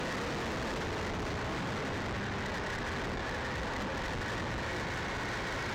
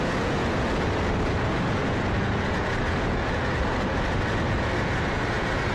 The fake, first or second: second